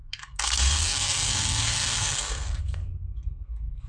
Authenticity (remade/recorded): remade